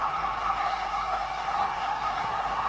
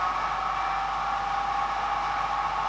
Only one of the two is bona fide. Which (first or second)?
second